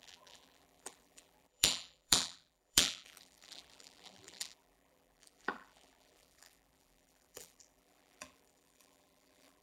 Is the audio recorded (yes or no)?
no